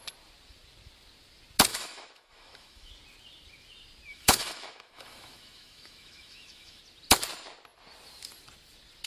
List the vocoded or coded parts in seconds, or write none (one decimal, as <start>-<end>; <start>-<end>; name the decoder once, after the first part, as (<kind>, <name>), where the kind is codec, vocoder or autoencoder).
1.7-2.9 (autoencoder, DAC-VAE); 4.1-6.8